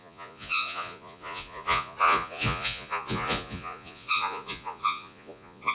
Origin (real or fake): fake